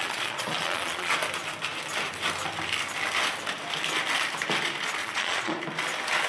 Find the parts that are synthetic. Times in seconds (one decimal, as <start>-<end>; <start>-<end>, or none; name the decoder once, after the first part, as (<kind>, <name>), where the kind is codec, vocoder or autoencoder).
0.0-1.1 (vocoder, Vocos); 5.0-5.6